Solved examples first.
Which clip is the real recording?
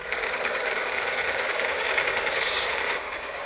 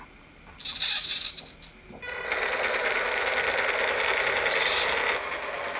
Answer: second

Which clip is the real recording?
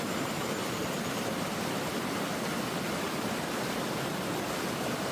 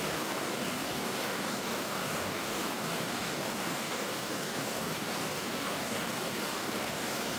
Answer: first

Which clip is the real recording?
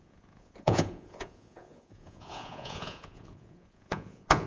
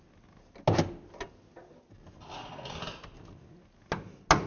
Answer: second